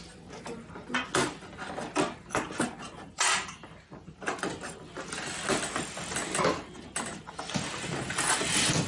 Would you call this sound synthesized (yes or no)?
no